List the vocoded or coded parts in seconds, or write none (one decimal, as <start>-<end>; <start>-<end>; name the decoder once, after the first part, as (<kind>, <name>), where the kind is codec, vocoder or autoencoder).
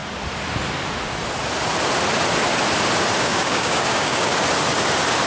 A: 3.2-4.3 (codec, DAC)